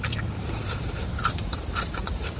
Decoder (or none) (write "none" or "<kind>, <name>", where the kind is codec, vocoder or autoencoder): vocoder, BigVGAN v2